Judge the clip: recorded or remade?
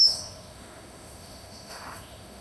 remade